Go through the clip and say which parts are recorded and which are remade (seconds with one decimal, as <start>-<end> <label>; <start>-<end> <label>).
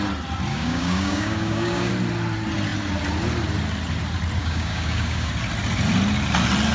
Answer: 0.0-0.5 recorded; 0.5-1.9 remade; 1.9-4.4 recorded; 4.4-5.3 remade; 5.3-6.7 recorded